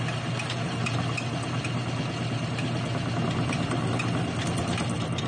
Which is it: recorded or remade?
recorded